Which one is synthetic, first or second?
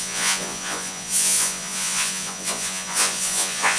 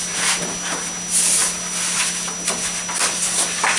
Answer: first